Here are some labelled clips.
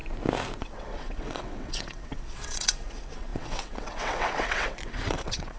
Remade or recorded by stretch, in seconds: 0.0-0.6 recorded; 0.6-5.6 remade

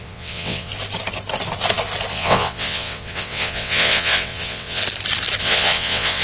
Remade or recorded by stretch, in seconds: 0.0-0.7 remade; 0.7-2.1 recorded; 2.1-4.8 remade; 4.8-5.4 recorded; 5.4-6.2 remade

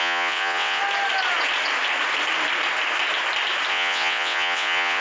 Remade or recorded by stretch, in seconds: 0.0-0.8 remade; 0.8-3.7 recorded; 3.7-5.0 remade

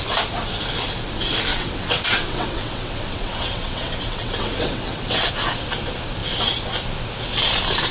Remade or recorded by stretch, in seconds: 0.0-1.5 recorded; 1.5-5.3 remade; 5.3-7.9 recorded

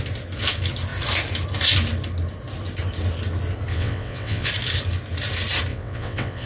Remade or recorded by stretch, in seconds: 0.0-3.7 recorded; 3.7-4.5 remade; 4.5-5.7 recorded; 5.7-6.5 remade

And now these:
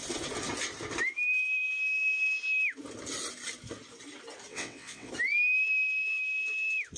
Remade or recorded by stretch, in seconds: 0.0-4.5 recorded; 4.5-5.1 remade; 5.1-7.0 recorded